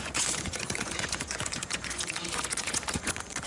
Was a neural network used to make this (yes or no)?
yes